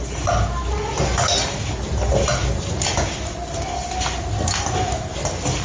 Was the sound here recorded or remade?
recorded